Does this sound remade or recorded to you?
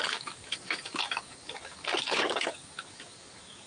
remade